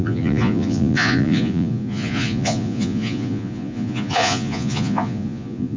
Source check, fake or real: fake